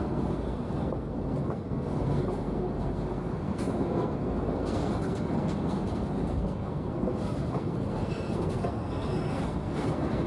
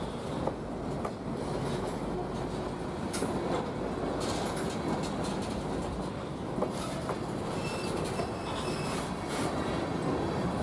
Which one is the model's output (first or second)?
first